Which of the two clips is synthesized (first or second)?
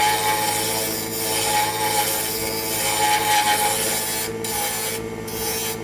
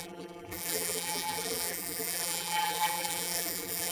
second